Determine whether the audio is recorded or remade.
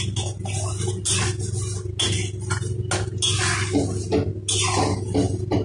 recorded